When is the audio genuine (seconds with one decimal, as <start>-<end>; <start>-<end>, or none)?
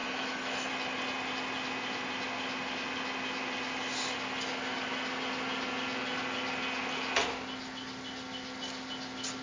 0.7-9.4